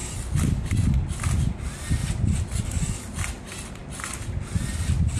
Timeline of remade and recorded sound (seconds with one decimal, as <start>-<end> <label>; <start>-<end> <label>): 0.0-5.2 recorded